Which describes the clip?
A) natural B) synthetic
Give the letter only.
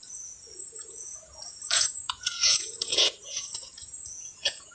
B